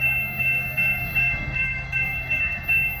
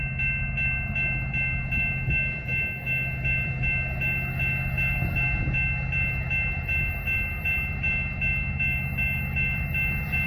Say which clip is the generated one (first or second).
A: first